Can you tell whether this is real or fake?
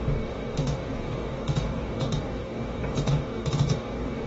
fake